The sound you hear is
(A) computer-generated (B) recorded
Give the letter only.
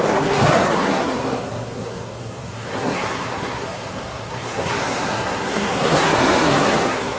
A